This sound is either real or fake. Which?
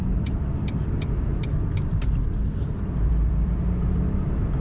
fake